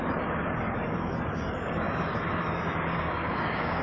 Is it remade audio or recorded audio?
remade